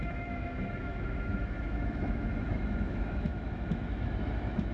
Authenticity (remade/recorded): remade